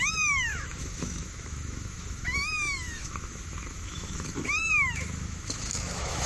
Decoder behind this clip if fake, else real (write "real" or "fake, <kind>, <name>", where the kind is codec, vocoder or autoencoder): fake, autoencoder, DAC-VAE